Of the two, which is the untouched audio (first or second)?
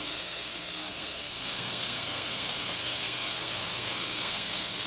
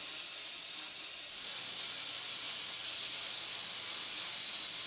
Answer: second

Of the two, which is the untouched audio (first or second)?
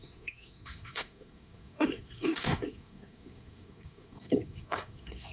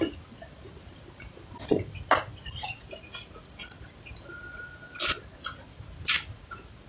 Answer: second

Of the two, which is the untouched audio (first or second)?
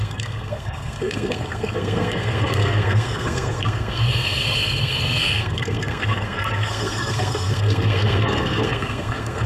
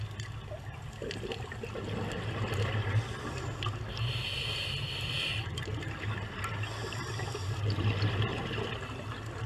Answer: second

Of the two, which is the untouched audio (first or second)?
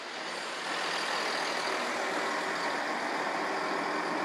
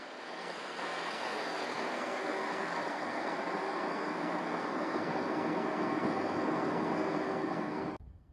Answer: first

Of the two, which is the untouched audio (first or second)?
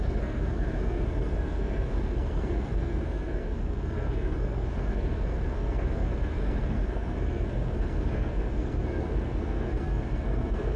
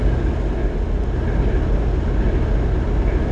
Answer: second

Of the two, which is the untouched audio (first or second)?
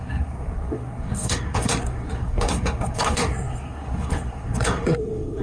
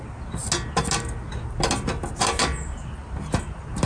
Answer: second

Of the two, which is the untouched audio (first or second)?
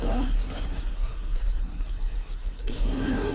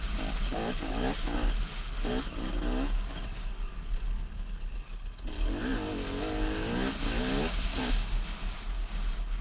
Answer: second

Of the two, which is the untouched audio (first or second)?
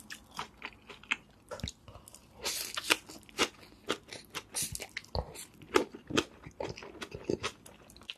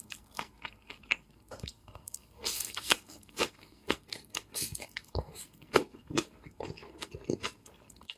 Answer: first